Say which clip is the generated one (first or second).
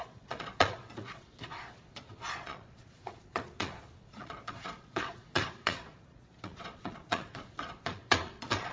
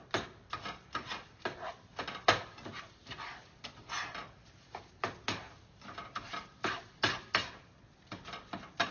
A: first